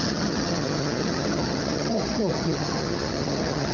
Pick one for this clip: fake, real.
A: fake